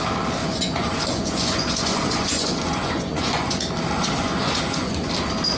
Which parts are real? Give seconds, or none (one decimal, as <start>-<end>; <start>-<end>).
0.0-0.4; 3.6-4.2; 5.1-5.6